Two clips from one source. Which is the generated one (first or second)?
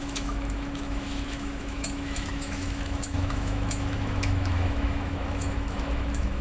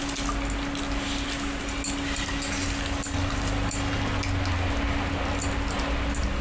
first